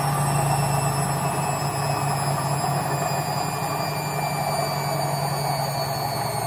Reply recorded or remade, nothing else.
recorded